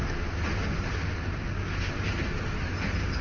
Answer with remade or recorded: recorded